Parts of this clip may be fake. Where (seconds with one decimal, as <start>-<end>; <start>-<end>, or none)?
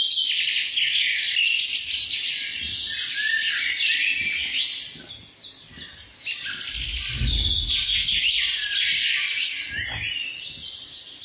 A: none